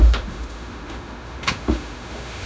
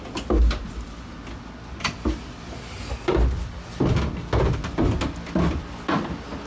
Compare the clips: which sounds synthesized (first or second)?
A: first